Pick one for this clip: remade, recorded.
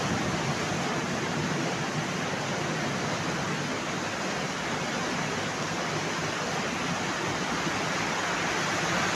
recorded